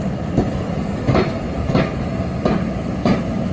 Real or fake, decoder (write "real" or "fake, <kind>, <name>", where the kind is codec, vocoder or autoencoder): real